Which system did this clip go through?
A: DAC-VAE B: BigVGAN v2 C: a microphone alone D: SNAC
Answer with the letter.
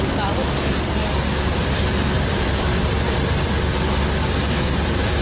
B